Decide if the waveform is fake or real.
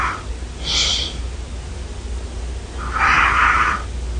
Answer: real